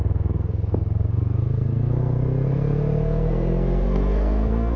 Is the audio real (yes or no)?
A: no